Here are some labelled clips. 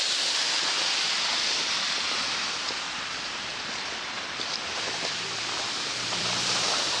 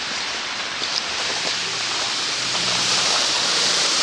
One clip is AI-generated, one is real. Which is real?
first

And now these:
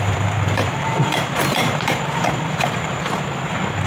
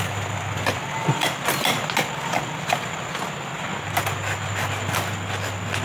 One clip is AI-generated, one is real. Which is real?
second